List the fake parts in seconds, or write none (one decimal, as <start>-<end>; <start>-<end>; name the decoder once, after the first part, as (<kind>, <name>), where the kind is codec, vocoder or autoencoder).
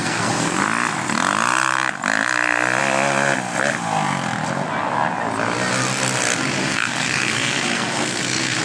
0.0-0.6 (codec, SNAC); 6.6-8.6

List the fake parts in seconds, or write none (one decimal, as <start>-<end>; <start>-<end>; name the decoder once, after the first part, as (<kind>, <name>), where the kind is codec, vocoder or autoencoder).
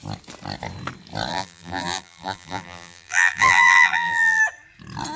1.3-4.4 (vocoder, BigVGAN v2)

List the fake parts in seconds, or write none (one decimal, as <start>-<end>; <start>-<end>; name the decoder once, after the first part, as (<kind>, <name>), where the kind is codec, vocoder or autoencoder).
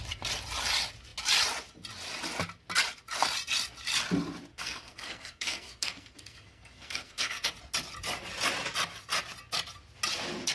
4.5-7.5 (codec, SNAC)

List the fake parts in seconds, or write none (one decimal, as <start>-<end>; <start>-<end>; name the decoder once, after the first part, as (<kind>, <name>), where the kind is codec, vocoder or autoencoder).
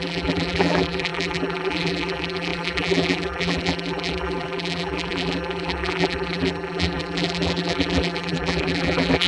0.0-9.3 (vocoder, BigVGAN v2)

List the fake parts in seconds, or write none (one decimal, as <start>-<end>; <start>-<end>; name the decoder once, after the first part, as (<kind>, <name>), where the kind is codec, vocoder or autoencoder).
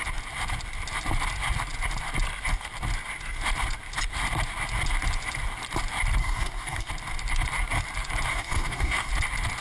6.2-6.9 (codec, DAC); 8.3-9.1